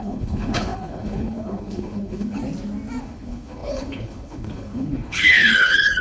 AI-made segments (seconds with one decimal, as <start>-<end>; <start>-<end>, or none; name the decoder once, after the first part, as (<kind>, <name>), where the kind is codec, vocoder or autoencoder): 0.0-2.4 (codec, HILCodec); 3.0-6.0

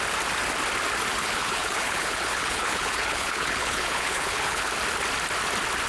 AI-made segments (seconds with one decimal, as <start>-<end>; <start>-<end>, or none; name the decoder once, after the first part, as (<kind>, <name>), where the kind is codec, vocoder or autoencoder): 1.2-4.7 (codec, HILCodec)

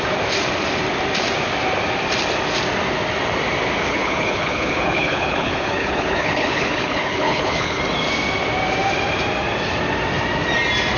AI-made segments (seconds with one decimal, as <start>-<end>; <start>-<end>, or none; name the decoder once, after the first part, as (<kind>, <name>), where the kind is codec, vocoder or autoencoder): 3.9-7.8 (codec, HILCodec)

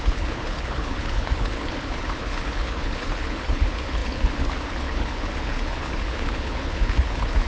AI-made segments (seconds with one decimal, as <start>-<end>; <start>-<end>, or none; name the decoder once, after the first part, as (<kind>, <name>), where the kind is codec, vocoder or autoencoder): 0.0-7.5 (codec, HILCodec)